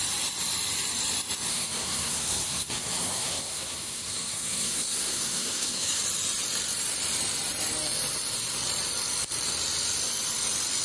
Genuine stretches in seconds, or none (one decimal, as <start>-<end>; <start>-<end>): 0.0-1.5; 6.0-10.8